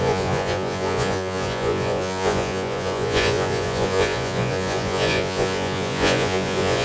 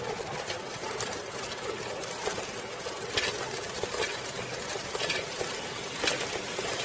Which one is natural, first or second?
second